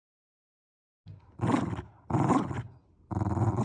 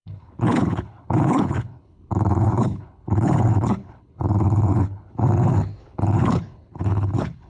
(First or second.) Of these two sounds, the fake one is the second